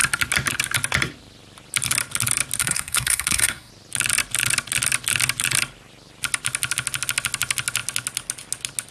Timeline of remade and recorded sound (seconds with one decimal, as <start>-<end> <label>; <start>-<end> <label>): 0.0-2.6 recorded; 2.6-3.7 remade; 3.7-8.9 recorded